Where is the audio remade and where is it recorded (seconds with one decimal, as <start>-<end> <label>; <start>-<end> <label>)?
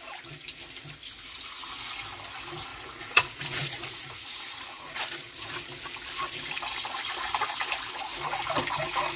0.0-2.7 recorded; 2.7-4.8 remade; 4.8-9.2 recorded